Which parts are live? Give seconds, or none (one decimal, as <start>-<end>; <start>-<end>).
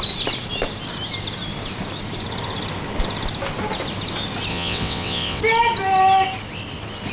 0.0-4.5; 5.4-7.1